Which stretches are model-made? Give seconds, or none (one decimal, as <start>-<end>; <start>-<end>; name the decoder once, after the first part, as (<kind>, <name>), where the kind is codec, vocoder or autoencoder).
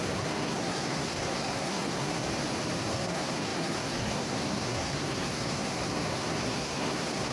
0.0-2.2 (codec, SNAC); 2.9-7.3